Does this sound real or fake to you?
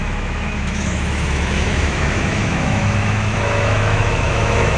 fake